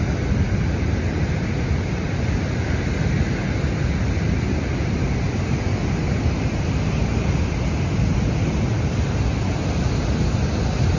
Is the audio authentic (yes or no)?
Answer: yes